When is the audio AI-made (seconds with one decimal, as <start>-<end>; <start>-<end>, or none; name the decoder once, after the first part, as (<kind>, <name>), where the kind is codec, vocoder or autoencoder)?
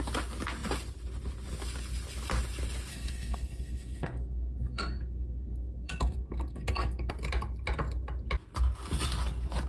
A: 2.9-7.1 (codec, SNAC)